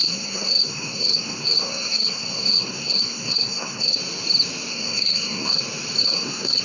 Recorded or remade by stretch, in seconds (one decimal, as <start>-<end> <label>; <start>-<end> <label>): 0.0-4.0 remade; 4.0-4.7 recorded; 4.7-5.6 remade; 5.6-6.0 recorded; 6.0-6.6 remade